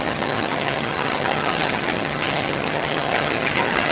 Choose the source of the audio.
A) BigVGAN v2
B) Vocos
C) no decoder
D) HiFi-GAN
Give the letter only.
D